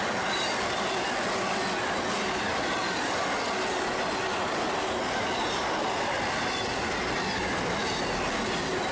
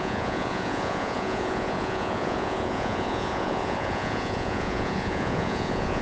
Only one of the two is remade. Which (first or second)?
second